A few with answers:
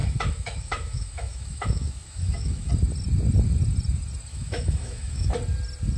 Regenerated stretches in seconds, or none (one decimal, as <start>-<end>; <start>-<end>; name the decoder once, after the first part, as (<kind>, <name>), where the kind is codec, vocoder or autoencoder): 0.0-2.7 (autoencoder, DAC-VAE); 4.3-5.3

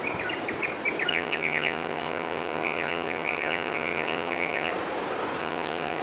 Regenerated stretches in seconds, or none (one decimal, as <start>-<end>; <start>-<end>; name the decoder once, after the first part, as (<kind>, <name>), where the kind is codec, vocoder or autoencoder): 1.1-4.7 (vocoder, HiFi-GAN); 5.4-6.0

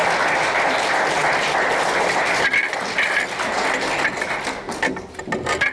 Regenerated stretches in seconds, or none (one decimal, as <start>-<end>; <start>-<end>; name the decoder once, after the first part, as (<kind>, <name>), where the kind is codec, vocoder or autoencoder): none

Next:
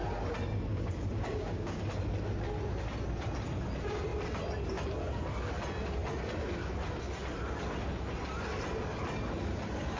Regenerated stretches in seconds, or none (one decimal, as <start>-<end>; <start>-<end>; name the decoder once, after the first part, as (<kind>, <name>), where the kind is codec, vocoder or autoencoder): 0.7-1.8 (codec, DAC)